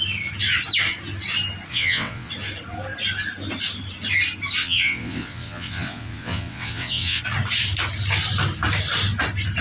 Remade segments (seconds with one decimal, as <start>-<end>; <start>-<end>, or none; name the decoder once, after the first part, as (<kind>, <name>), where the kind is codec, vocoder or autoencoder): 1.7-2.3 (vocoder, WaveNeXt); 4.6-7.2